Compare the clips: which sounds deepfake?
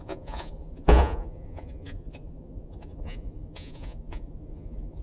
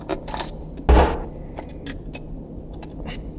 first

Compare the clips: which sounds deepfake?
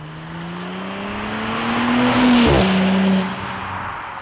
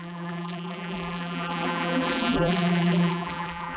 second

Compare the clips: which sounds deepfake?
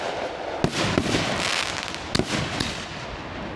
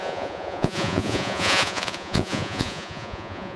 second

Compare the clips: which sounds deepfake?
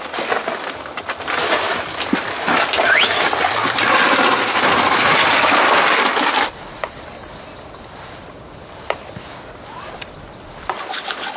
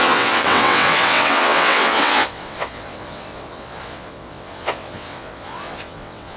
second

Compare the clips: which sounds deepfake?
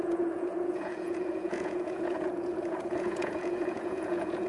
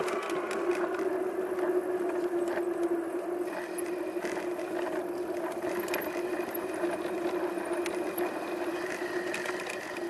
first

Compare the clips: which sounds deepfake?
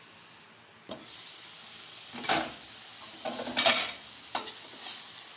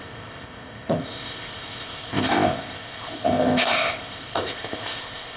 second